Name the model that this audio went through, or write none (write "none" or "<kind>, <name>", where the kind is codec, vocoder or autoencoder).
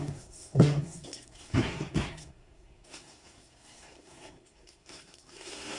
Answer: codec, SNAC